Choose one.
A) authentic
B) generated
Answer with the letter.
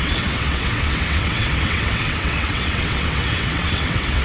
B